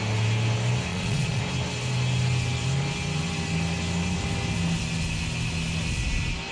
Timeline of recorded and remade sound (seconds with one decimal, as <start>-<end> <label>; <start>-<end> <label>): 0.0-0.9 recorded; 0.9-1.4 remade; 1.4-6.5 recorded

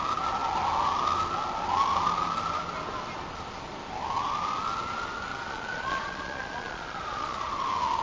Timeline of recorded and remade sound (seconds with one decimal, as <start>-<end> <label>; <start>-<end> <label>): 0.0-5.3 recorded; 5.3-7.5 remade; 7.5-8.0 recorded

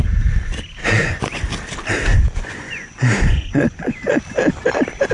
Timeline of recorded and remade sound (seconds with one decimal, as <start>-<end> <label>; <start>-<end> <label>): 0.0-0.8 recorded; 0.8-1.5 remade; 1.5-2.1 recorded; 2.1-4.2 remade; 4.2-5.1 recorded